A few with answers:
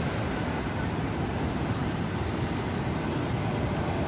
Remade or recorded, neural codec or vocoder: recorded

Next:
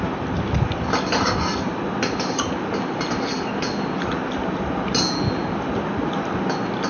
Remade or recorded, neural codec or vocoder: recorded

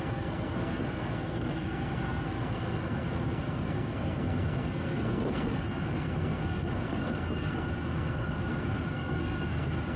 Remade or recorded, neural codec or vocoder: remade, codec, SNAC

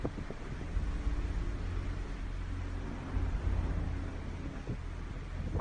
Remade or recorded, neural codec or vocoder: recorded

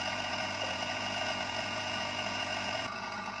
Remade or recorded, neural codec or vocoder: remade, vocoder, Vocos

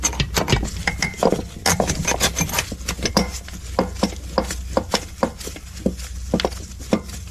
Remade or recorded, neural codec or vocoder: recorded